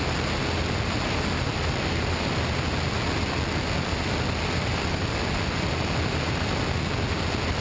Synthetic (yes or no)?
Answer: no